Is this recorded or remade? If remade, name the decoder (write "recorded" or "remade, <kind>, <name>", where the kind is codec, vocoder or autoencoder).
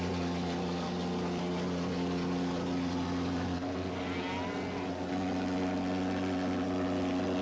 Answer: recorded